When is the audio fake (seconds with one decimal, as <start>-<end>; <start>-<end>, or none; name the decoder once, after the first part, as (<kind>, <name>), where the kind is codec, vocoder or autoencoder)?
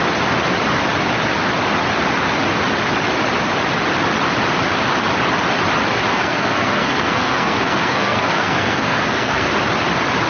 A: 6.1-9.5 (codec, SNAC)